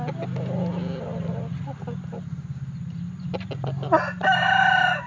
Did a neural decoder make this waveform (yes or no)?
no